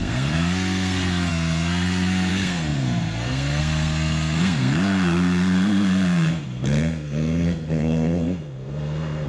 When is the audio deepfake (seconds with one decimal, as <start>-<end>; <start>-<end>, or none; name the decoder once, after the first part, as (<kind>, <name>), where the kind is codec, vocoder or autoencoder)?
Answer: 0.0-9.3 (codec, SNAC)

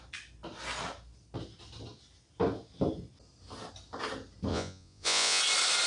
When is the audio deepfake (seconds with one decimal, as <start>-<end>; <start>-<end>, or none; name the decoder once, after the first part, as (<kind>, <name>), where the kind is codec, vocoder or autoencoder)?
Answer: 4.5-5.4 (vocoder, Vocos)

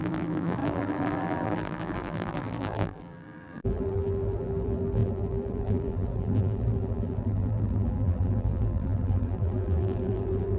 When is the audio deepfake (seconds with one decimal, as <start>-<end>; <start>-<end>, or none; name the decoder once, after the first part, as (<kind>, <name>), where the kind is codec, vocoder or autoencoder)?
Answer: 0.0-10.6 (vocoder, BigVGAN v2)

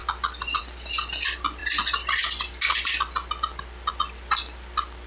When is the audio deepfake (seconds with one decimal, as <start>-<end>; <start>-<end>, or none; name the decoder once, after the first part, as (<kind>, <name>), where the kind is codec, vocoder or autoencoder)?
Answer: none

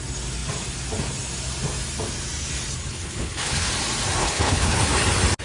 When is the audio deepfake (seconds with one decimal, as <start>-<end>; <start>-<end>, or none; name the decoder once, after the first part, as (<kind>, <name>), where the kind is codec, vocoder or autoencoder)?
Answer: 2.9-3.7 (codec, HILCodec); 4.2-4.8